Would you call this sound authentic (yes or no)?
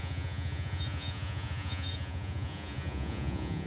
no